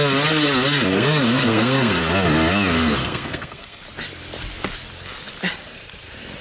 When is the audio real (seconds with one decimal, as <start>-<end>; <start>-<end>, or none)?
0.0-0.9; 2.0-3.0; 3.8-6.4